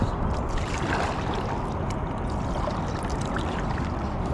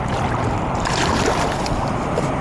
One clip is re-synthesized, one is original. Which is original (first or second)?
first